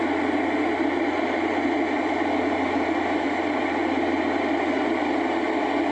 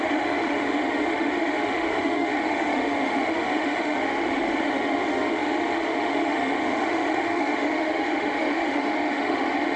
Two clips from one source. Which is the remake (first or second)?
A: second